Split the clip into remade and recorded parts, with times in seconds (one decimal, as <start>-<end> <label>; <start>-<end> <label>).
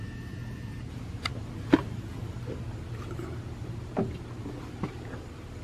0.0-5.6 recorded